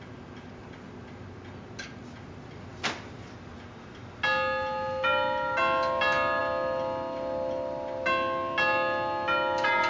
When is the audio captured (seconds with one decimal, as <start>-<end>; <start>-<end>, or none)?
0.0-9.9